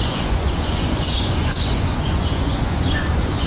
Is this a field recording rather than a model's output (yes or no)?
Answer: no